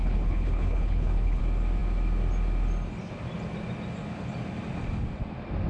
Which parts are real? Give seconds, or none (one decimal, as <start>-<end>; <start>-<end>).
1.4-5.7